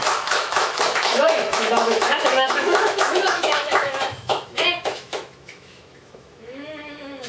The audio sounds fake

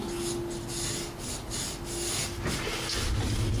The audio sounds real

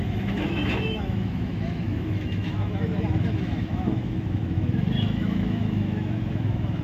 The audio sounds fake